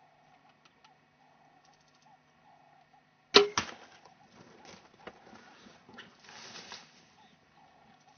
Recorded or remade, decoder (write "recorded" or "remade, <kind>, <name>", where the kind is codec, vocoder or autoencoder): recorded